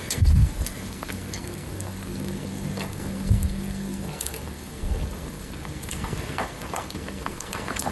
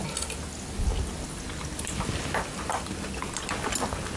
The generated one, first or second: first